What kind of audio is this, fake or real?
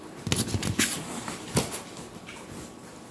real